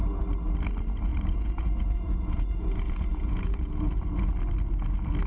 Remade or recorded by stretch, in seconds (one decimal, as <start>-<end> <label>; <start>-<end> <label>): 0.0-1.1 recorded; 1.1-4.0 remade; 4.0-5.3 recorded